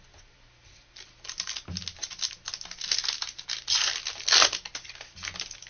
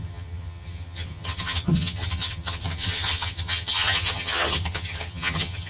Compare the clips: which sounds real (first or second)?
first